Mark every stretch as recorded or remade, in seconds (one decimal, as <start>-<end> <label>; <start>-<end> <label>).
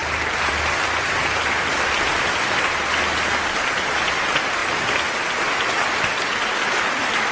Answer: 0.0-1.2 recorded; 1.2-2.1 remade; 2.1-7.3 recorded